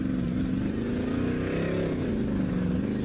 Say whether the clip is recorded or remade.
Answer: recorded